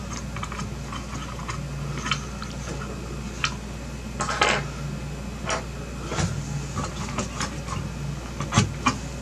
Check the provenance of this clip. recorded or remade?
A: recorded